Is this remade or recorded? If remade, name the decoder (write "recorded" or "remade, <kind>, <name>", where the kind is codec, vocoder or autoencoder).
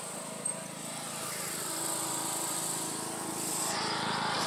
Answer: recorded